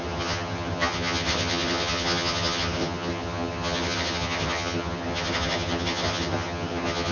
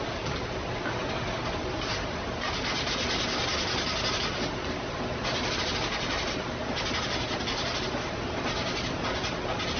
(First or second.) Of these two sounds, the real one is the second